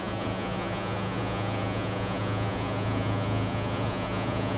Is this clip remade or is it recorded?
remade